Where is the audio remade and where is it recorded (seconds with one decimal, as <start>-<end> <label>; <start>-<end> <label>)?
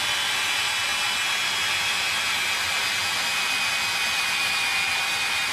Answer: 0.0-5.5 recorded